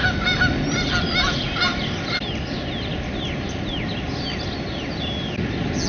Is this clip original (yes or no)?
yes